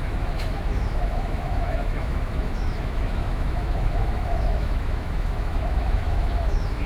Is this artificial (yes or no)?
yes